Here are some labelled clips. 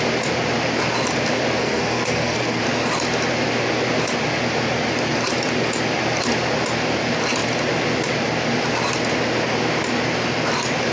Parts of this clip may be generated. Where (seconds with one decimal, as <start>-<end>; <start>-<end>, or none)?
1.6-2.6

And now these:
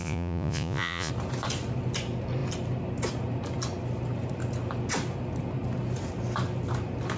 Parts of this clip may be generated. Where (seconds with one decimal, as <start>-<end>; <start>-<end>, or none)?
0.0-1.1

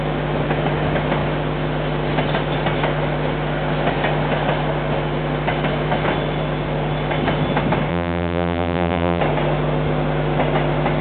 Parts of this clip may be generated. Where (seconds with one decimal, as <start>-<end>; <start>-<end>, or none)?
7.9-9.2

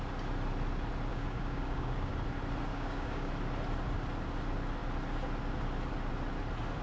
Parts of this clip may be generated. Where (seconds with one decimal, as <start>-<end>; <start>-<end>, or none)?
1.1-2.1; 2.7-3.3